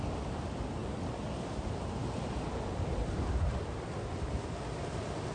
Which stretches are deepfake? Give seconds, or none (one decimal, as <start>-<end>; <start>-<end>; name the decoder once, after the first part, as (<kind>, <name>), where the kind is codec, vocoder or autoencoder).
none